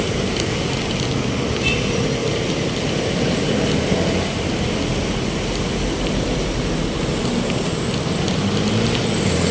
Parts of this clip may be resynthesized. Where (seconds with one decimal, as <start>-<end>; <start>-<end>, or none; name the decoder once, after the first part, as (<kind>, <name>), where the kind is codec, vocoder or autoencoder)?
none